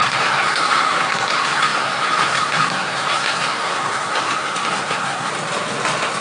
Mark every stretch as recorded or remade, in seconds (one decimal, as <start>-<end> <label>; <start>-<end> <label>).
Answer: 0.0-5.3 remade; 5.3-6.2 recorded